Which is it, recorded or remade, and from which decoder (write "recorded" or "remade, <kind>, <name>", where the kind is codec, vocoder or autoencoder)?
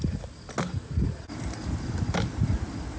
recorded